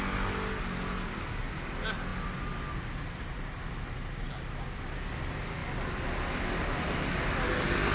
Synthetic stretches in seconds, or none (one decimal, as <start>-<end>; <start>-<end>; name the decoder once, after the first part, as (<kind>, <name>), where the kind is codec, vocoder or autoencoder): none

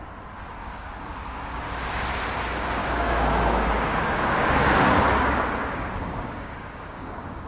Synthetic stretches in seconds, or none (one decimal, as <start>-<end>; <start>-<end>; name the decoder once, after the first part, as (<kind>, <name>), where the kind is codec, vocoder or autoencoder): 0.6-2.1 (codec, DAC); 2.8-7.5

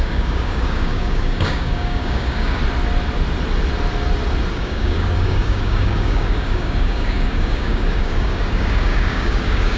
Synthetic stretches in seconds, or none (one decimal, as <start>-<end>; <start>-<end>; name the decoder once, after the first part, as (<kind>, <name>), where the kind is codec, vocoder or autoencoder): 0.0-2.6 (codec, DAC); 4.5-9.8

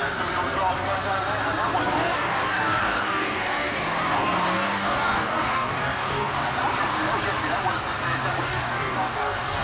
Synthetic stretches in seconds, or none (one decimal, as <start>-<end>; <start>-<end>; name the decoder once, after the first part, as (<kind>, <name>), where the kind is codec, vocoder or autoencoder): 1.8-6.3 (codec, DAC); 8.4-9.6

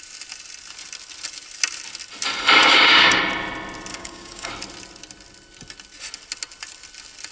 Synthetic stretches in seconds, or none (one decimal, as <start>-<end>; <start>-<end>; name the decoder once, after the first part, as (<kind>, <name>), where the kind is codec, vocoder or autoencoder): 2.6-3.2 (codec, DAC); 3.9-4.5

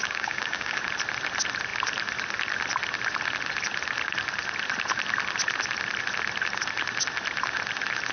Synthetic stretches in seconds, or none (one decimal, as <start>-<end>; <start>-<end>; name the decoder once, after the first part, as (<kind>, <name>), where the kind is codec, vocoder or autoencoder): 0.0-0.8 (codec, DAC)

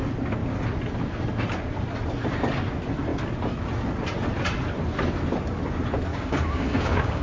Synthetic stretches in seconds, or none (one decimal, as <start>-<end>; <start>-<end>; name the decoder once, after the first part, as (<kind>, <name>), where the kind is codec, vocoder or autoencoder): 6.1-7.2 (codec, DAC)

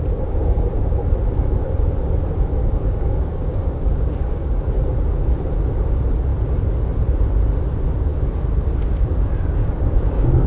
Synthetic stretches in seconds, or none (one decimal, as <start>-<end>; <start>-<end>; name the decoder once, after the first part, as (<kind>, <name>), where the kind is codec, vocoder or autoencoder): 2.6-4.7 (codec, DAC); 9.6-10.5